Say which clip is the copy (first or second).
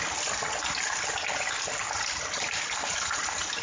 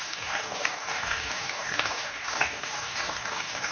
second